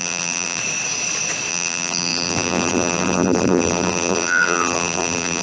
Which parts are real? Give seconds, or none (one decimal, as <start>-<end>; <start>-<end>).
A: 0.6-1.5